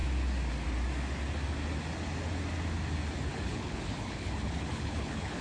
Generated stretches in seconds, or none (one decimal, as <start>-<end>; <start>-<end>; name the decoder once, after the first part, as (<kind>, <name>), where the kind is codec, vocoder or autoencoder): 3.3-5.4 (codec, HILCodec)